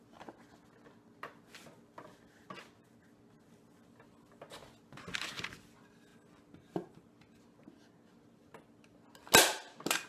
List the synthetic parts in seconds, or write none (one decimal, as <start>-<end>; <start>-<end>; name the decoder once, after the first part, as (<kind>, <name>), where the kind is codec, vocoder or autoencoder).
none